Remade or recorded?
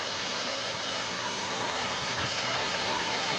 remade